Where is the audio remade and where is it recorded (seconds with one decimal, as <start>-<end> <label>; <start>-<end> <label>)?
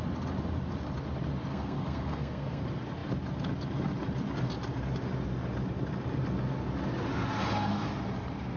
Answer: 0.0-1.5 recorded; 1.5-2.6 remade; 2.6-8.6 recorded